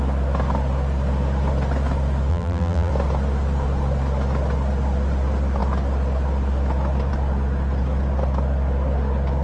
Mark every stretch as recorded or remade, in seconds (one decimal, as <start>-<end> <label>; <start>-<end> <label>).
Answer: 0.0-2.3 recorded; 2.3-2.9 remade; 2.9-9.4 recorded

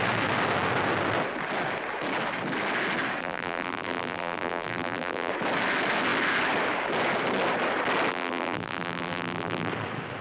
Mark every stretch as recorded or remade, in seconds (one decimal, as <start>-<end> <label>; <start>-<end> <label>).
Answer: 0.0-3.2 recorded; 3.2-5.3 remade; 5.3-8.1 recorded; 8.1-9.7 remade; 9.7-10.2 recorded

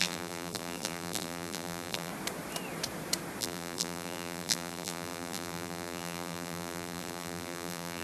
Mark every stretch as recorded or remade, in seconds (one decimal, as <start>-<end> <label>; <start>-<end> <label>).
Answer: 0.0-2.1 remade; 2.1-3.4 recorded; 3.4-8.0 remade

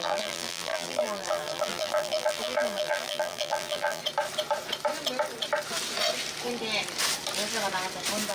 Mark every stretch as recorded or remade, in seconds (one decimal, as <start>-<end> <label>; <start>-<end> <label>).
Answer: 0.0-4.0 remade; 4.0-8.3 recorded

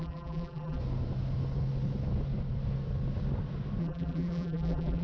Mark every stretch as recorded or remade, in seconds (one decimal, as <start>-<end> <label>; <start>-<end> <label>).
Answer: 0.0-0.8 remade; 0.8-3.8 recorded; 3.8-5.0 remade

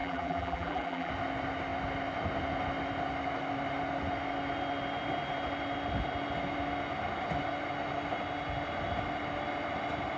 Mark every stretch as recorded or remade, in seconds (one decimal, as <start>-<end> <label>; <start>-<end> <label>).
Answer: 0.0-1.1 remade; 1.1-10.2 recorded

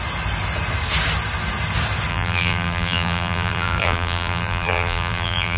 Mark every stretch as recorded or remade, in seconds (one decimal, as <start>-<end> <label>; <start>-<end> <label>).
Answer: 0.0-2.1 recorded; 2.1-5.6 remade

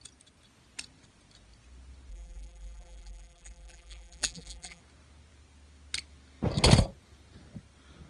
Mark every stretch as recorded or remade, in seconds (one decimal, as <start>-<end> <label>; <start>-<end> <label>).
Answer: 0.0-2.1 recorded; 2.1-4.8 remade; 4.8-8.1 recorded